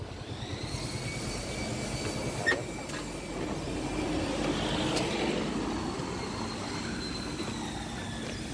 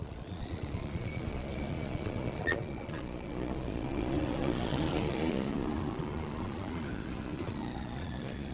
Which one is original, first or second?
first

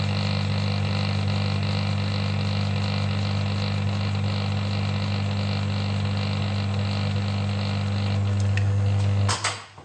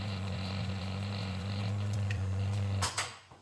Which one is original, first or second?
first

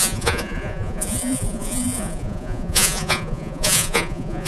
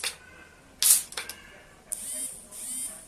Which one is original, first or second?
second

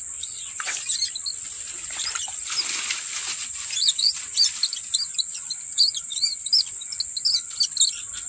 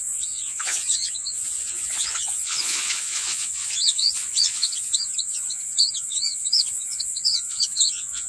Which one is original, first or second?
first